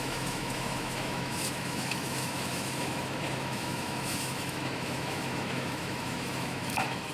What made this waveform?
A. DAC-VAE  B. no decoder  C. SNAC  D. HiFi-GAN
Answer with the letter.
A